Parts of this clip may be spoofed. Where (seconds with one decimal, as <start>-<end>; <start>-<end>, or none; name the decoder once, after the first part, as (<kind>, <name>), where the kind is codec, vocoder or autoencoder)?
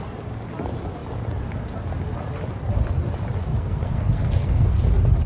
3.5-4.8 (codec, SNAC)